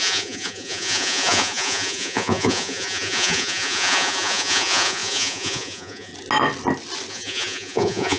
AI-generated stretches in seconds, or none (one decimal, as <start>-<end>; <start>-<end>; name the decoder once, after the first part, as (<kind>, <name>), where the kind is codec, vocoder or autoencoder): 0.0-6.1 (vocoder, Vocos); 7.1-8.2